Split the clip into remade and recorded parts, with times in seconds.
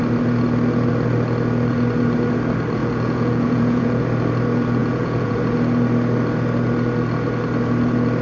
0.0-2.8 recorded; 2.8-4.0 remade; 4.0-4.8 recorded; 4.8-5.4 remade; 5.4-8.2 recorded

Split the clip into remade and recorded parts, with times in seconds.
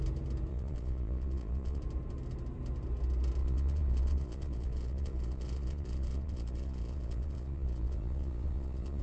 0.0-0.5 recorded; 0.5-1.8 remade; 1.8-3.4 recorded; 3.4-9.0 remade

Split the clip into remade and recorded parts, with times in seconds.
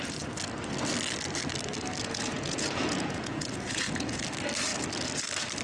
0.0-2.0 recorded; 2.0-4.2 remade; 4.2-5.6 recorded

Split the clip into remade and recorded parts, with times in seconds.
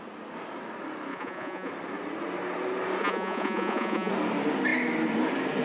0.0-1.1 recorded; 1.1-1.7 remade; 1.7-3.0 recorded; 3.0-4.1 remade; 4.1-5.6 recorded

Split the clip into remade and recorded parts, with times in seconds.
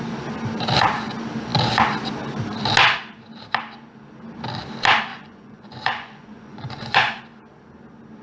0.0-5.1 recorded; 5.1-7.2 remade; 7.2-8.2 recorded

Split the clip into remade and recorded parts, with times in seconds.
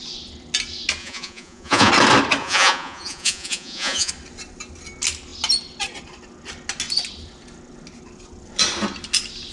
0.0-1.0 recorded; 1.0-1.9 remade; 1.9-2.4 recorded; 2.4-4.1 remade; 4.1-9.5 recorded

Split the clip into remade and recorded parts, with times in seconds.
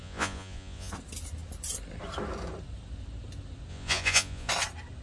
0.0-0.9 remade; 0.9-3.7 recorded; 3.7-4.5 remade; 4.5-5.0 recorded